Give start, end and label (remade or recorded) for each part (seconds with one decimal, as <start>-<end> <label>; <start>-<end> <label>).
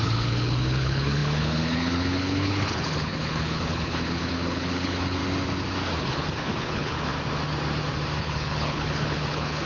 0.0-5.2 remade; 5.2-6.0 recorded; 6.0-7.1 remade; 7.1-8.2 recorded; 8.2-9.7 remade